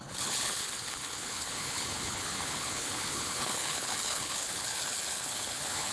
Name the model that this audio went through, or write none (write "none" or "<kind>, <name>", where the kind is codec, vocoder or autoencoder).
codec, HILCodec